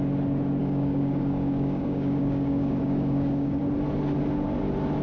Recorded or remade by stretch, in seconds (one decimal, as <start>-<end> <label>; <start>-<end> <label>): 0.0-0.6 recorded; 0.6-3.6 remade; 3.6-5.0 recorded